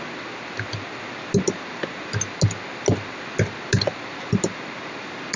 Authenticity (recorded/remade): recorded